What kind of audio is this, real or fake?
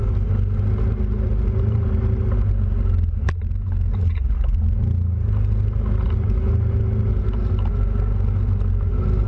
real